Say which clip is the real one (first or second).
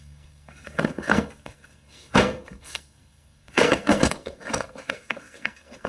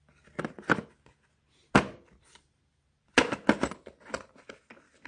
second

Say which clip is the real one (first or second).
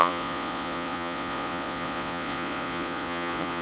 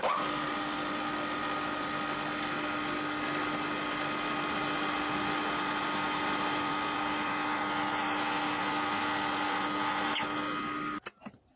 second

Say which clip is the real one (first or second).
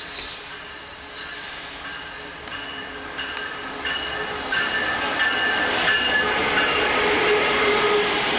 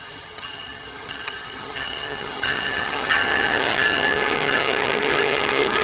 first